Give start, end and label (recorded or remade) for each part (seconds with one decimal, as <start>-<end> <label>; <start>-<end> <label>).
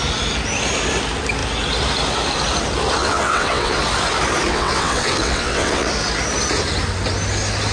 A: 0.0-3.0 recorded; 3.0-3.8 remade; 3.8-4.5 recorded; 4.5-5.9 remade; 5.9-7.7 recorded